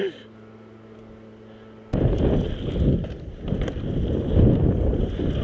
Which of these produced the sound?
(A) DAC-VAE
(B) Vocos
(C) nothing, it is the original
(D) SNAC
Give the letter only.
C